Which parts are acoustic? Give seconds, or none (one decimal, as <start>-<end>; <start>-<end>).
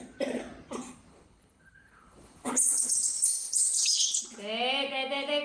0.0-1.1; 4.2-5.4